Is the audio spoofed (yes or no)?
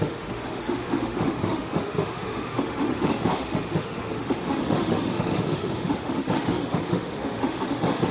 yes